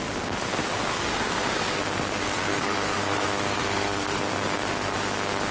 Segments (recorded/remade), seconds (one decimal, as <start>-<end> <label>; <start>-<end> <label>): 0.0-0.9 recorded; 0.9-1.8 remade; 1.8-2.2 recorded; 2.2-4.2 remade; 4.2-5.5 recorded